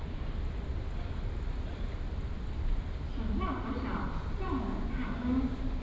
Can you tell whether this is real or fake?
real